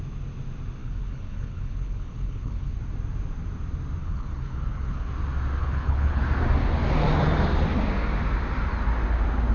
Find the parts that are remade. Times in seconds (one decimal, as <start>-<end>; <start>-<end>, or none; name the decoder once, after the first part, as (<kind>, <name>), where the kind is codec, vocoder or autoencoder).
0.8-2.8 (codec, HILCodec); 4.0-5.1; 5.6-6.2